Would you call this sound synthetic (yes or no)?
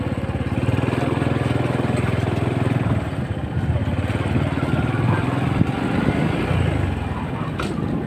no